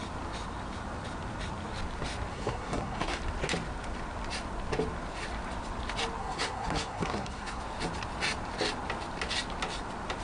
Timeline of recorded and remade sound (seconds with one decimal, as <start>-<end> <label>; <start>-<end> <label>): 0.0-2.3 recorded; 2.3-3.2 remade; 3.2-6.2 recorded; 6.2-7.6 remade; 7.6-10.2 recorded